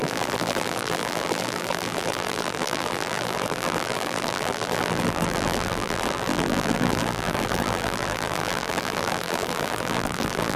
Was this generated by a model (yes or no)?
yes